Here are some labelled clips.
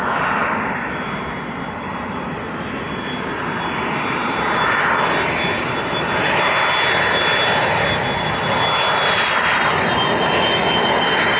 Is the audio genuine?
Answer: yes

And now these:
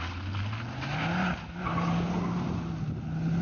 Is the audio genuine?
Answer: yes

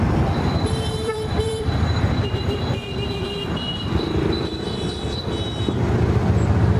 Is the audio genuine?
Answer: no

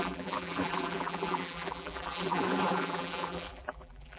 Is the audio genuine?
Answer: no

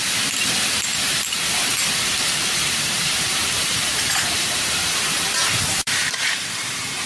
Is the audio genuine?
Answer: no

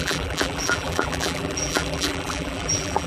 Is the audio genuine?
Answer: no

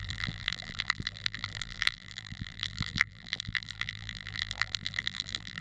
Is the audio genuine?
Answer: no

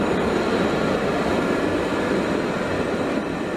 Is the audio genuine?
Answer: yes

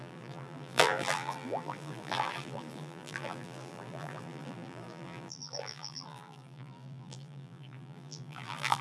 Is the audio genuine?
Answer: no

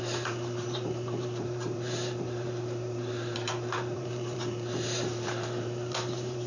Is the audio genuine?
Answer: no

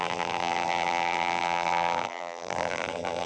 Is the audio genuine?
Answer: no